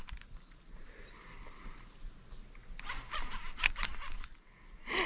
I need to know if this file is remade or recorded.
recorded